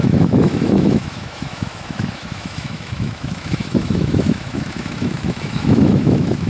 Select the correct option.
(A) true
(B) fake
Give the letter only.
B